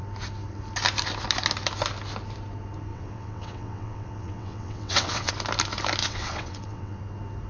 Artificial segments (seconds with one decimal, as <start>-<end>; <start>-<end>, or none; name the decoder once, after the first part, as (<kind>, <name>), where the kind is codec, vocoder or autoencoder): 2.9-5.3 (vocoder, WaveNeXt); 6.0-7.0